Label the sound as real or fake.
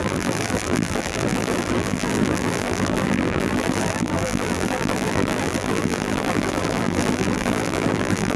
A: fake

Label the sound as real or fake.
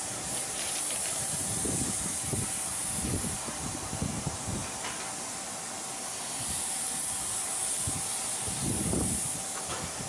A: fake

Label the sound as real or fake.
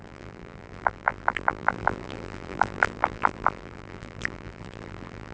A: fake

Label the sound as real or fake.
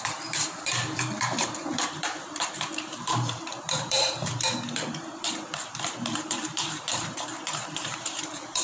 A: fake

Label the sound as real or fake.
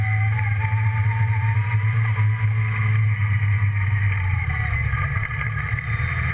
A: real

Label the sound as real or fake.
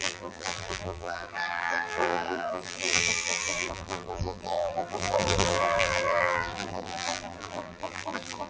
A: fake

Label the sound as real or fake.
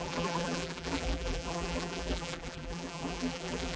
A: fake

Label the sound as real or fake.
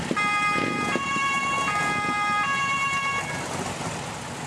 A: real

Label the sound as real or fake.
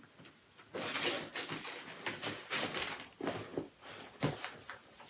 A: real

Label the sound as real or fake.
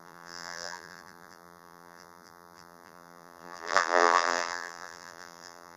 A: fake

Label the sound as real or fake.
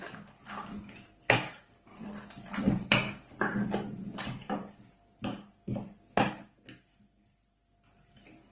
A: real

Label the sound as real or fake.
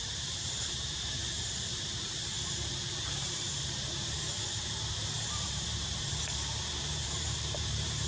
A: fake